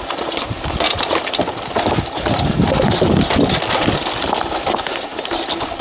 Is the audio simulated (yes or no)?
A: no